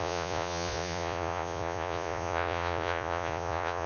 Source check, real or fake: fake